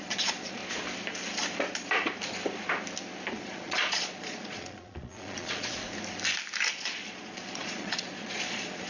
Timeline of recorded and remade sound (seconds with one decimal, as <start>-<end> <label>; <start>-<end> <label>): 0.0-0.6 remade; 0.6-3.3 recorded; 3.3-5.8 remade; 5.8-6.7 recorded; 6.7-8.9 remade

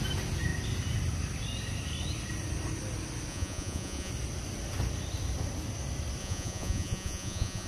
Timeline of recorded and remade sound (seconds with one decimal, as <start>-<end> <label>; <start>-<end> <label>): 0.0-3.3 recorded; 3.3-4.1 remade; 4.1-6.2 recorded; 6.2-7.7 remade